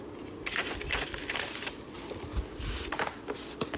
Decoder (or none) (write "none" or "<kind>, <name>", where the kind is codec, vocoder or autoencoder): none